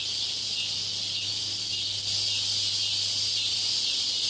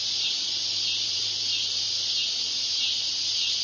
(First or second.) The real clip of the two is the first